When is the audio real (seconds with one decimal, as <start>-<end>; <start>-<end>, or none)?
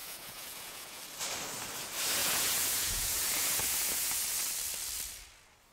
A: 1.0-2.2; 4.2-5.7